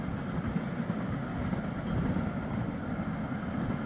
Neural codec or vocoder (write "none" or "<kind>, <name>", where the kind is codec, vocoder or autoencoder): none